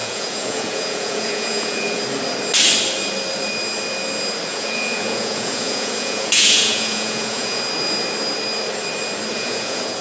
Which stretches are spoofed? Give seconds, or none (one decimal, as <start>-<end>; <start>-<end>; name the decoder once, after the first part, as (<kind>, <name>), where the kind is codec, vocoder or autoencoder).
0.0-2.0 (vocoder, Vocos); 4.5-7.6; 9.3-10.0